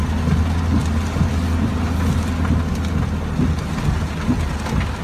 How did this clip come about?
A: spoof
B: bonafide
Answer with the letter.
B